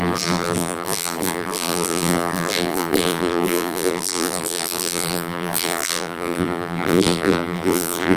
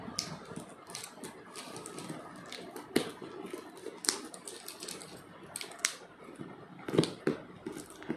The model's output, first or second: first